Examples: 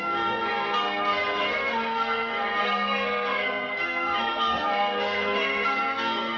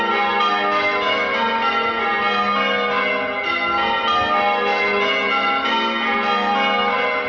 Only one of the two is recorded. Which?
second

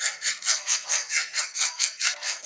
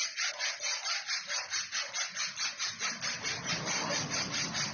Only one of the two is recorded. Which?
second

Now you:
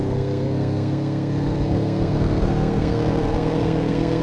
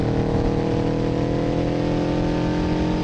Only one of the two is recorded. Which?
second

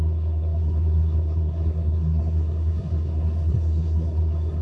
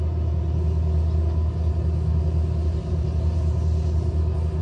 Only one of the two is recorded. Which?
second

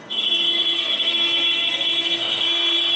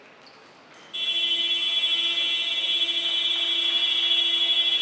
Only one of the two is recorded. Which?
second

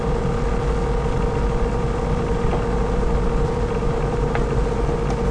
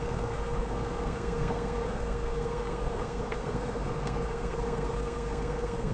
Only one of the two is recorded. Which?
first